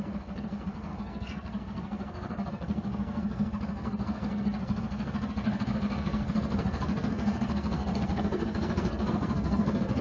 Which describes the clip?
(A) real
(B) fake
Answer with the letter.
B